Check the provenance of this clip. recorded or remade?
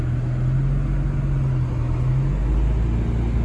recorded